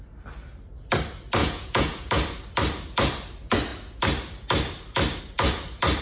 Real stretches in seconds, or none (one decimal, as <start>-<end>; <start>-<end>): 0.0-1.4; 2.1-6.0